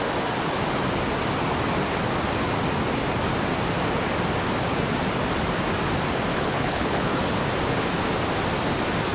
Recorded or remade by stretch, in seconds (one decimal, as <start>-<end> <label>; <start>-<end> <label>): 0.0-6.3 recorded; 6.3-7.2 remade; 7.2-9.1 recorded